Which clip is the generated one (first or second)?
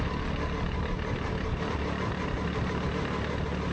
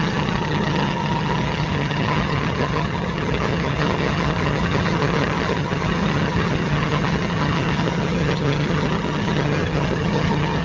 second